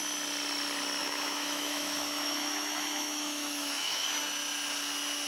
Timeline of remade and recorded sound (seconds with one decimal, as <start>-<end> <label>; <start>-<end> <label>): 0.0-1.0 recorded; 1.0-4.2 remade; 4.2-5.3 recorded

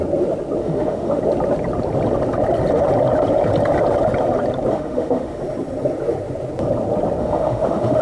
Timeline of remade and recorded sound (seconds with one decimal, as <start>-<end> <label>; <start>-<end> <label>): 0.0-0.6 recorded; 0.6-1.2 remade; 1.2-4.7 recorded; 4.7-5.4 remade; 5.4-7.2 recorded; 7.2-8.0 remade